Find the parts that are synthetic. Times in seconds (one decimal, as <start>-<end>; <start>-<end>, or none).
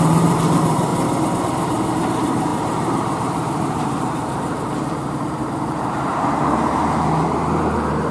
0.0-0.9; 1.4-8.1